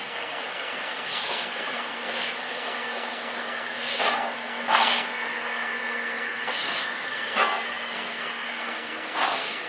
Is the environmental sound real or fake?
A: fake